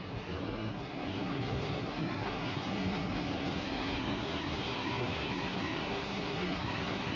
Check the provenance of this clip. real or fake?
fake